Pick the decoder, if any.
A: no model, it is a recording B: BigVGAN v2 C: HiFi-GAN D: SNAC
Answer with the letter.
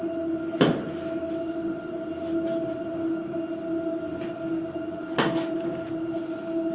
A